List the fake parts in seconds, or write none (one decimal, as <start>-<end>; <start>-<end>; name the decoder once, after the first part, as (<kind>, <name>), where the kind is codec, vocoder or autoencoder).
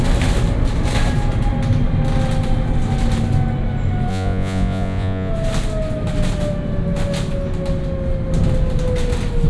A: 4.1-5.3 (vocoder, Vocos)